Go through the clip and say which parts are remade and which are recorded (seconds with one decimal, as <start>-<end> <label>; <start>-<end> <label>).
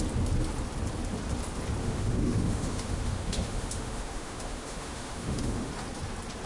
0.0-1.8 recorded; 1.8-5.7 remade; 5.7-6.5 recorded